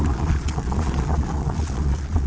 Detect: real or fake fake